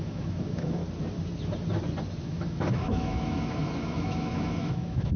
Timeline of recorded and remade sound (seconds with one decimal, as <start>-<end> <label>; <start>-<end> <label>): 0.0-0.8 remade; 0.8-2.2 recorded; 2.2-5.2 remade